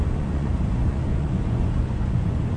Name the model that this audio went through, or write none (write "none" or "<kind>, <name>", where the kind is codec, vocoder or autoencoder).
vocoder, Vocos